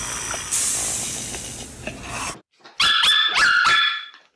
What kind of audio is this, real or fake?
real